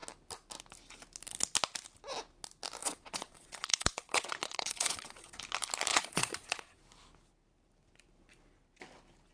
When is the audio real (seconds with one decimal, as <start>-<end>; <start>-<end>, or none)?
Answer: 0.0-2.8; 5.4-5.9; 6.8-9.3